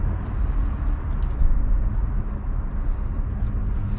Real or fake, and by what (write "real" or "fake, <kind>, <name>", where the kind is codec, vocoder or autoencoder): real